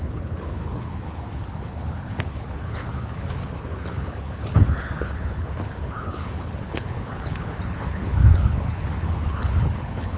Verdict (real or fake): fake